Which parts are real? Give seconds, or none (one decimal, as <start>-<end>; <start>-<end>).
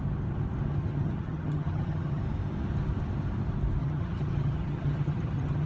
0.0-0.8; 2.2-3.8